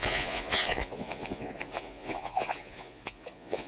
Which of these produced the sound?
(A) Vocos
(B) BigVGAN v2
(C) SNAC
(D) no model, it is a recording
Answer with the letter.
A